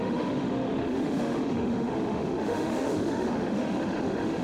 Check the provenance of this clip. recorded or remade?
remade